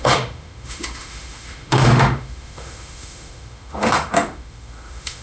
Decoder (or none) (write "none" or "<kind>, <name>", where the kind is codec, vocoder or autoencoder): autoencoder, DAC-VAE